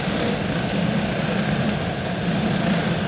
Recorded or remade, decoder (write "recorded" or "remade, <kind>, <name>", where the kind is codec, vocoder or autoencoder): recorded